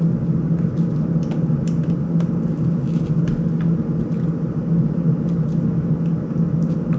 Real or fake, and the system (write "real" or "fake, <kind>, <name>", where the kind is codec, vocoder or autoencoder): real